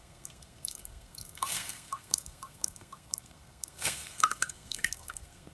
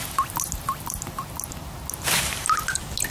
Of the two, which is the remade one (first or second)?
first